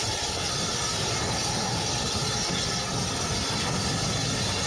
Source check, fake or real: real